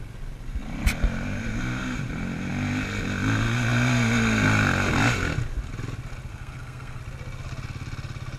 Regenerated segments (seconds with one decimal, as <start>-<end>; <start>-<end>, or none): 6.3-7.0